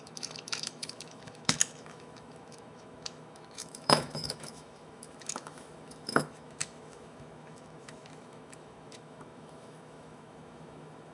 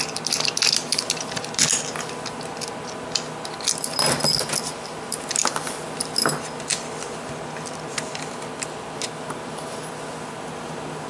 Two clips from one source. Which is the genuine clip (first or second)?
second